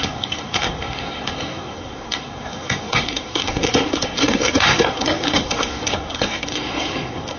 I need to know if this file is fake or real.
fake